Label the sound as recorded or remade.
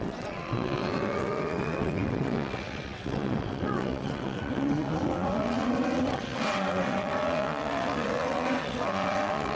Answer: remade